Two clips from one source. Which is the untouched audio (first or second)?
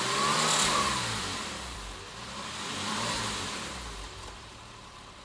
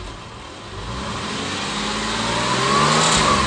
second